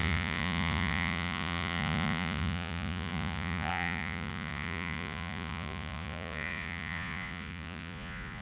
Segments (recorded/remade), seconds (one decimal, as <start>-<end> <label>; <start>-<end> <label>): 0.0-8.4 remade